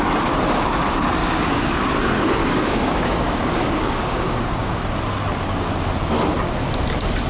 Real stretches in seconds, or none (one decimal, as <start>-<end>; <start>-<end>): 0.0-1.2; 1.8-2.4; 4.8-7.3